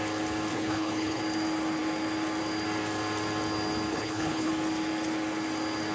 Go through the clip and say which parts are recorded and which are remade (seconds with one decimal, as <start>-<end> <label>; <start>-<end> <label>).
0.0-0.5 recorded; 0.5-1.2 remade; 1.2-3.9 recorded; 3.9-4.5 remade; 4.5-5.9 recorded